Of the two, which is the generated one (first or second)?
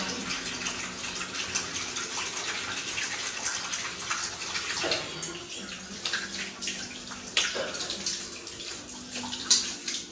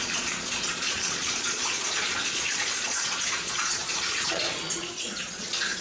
second